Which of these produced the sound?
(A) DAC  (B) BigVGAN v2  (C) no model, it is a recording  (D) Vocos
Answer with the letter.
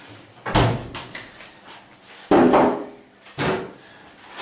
C